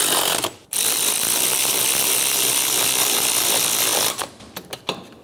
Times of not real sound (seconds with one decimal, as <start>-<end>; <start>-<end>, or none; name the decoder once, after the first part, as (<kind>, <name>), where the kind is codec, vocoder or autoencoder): 0.6-1.8 (vocoder, BigVGAN v2); 3.9-4.8